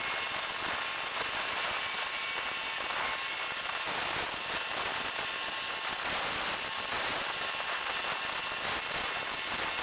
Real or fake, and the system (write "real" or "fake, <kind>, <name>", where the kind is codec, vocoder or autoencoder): real